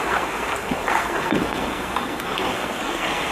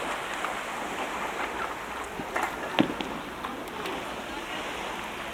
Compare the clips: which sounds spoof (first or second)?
first